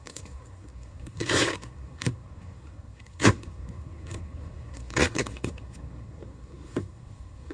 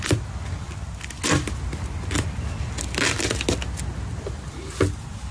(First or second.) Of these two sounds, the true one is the second